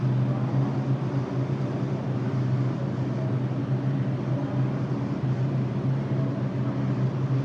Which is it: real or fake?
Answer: real